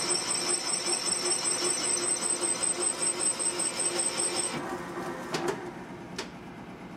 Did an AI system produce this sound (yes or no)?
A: no